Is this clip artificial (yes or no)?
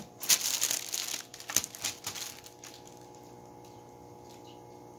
no